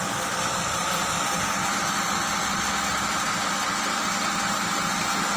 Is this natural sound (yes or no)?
yes